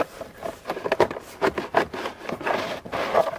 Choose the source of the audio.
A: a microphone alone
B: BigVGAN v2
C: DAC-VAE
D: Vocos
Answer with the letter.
A